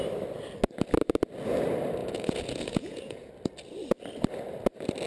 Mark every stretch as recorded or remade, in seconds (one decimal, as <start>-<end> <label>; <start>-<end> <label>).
0.0-2.0 recorded; 2.0-3.3 remade; 3.3-5.1 recorded